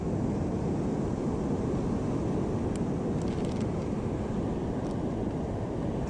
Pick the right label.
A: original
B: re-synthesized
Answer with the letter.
A